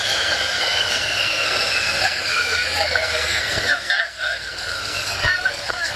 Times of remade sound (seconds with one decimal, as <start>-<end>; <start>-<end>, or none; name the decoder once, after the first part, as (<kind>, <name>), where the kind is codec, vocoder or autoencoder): 0.0-6.0 (codec, SNAC)